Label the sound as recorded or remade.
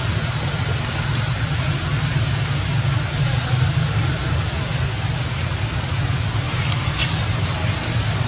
recorded